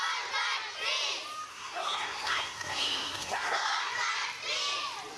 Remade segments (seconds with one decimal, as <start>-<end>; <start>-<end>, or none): 1.5-3.9